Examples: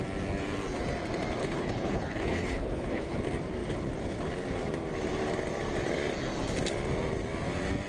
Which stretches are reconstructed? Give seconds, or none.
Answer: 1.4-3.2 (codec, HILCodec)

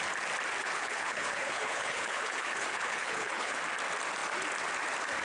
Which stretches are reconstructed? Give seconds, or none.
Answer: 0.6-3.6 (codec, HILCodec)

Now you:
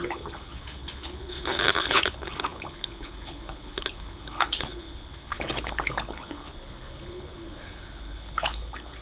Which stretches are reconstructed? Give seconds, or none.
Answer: 0.0-9.0 (codec, HILCodec)

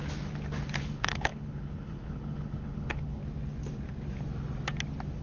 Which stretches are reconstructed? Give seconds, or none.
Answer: 0.8-3.2 (codec, HILCodec)